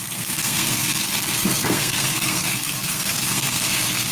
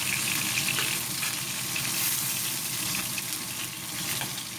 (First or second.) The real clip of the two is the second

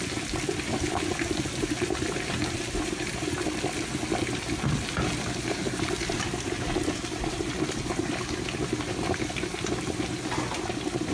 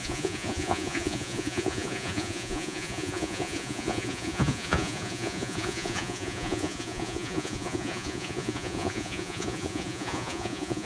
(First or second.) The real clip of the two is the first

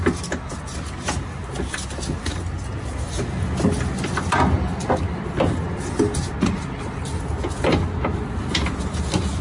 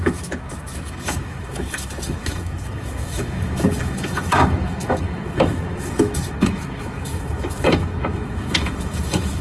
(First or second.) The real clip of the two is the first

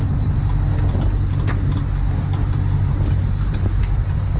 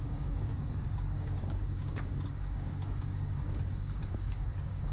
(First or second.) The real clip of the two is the first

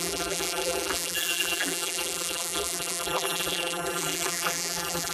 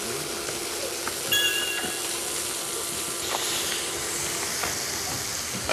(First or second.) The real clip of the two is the second